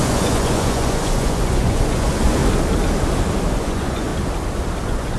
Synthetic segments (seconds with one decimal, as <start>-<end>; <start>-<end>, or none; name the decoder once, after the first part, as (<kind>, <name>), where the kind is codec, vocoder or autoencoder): 0.0-2.4 (vocoder, Vocos); 3.5-4.1; 4.8-5.2